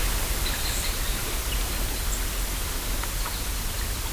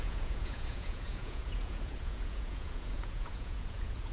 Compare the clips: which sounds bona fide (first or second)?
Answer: first